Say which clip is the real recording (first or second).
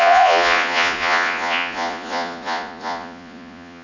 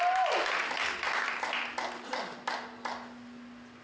second